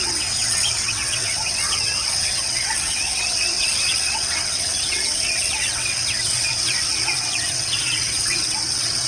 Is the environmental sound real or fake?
fake